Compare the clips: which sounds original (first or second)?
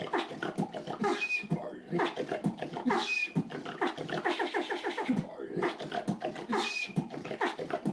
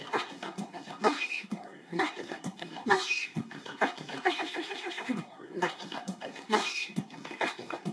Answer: first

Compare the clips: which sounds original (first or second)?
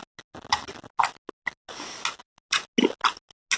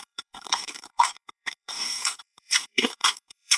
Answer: first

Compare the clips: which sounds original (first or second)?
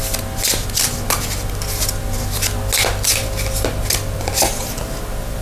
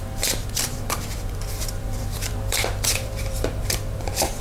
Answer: first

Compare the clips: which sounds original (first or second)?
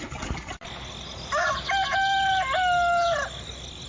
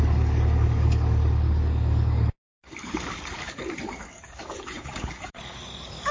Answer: first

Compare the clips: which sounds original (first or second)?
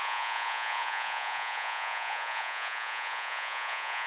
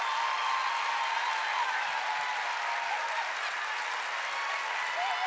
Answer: second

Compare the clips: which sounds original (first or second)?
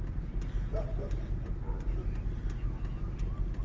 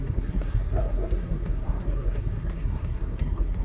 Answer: first